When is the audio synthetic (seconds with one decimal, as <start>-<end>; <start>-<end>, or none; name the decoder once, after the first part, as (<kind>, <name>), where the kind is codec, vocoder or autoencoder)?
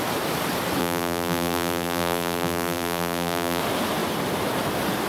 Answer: 0.8-3.6 (vocoder, BigVGAN v2)